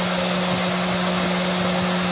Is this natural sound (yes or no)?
yes